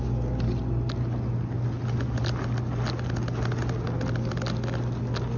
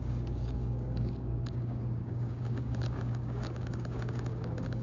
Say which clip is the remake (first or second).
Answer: second